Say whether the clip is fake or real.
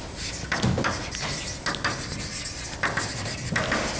real